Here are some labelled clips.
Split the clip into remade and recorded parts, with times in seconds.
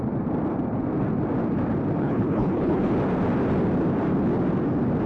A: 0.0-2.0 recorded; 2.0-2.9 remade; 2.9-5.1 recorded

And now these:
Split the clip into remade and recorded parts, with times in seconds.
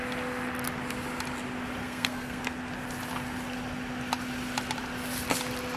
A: 0.0-1.8 recorded; 1.8-2.4 remade; 2.4-5.8 recorded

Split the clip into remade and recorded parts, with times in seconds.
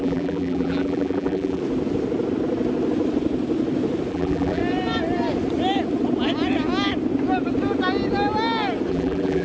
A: 0.0-1.6 remade; 1.6-4.1 recorded; 4.1-4.6 remade; 4.6-8.9 recorded; 8.9-9.4 remade